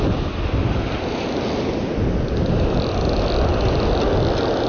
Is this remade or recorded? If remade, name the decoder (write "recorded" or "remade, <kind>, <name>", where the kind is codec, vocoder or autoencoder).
recorded